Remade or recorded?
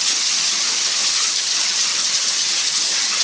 remade